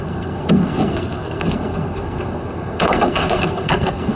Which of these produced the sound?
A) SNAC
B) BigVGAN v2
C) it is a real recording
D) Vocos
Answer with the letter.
A